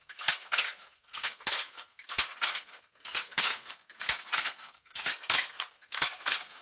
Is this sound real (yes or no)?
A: no